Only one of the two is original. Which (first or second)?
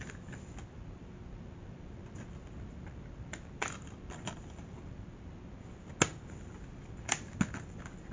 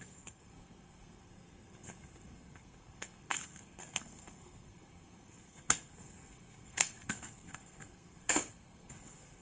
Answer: first